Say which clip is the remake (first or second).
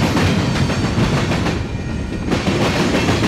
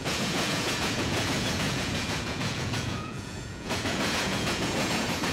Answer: second